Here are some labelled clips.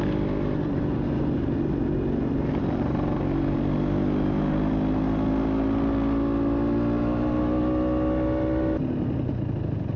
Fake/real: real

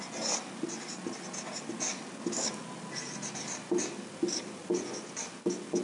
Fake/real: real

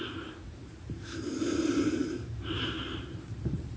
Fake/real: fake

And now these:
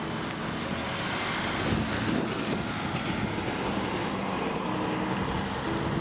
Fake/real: real